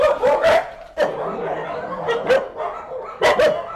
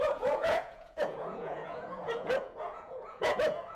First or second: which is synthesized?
second